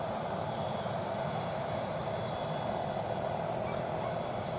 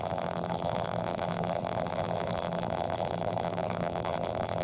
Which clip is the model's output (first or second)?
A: second